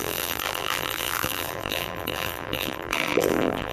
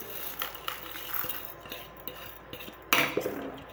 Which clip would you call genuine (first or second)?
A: second